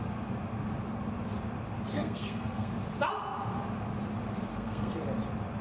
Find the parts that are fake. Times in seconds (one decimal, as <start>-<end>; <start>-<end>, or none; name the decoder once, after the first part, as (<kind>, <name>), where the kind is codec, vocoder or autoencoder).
1.9-2.7 (codec, SNAC); 4.5-5.0

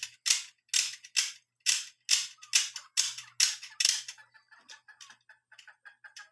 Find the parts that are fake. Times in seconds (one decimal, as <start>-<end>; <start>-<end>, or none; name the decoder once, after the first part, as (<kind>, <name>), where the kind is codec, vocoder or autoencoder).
none

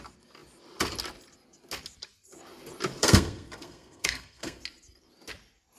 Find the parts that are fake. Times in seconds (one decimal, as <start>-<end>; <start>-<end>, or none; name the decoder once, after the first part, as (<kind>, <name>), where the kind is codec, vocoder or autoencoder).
3.0-4.6 (codec, SNAC)

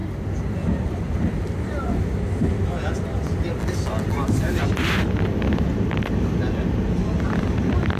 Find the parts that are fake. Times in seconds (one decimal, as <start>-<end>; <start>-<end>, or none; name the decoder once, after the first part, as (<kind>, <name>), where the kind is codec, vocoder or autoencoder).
none

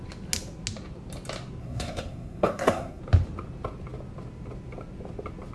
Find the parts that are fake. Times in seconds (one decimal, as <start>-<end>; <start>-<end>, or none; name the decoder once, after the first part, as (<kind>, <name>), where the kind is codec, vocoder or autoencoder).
1.6-3.0 (codec, SNAC)

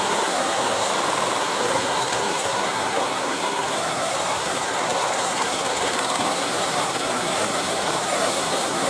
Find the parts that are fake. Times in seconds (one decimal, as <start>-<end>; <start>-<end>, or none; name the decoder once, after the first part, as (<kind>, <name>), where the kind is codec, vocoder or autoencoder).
0.0-0.9 (codec, SNAC); 1.4-8.9